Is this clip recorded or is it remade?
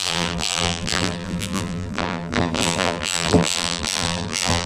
remade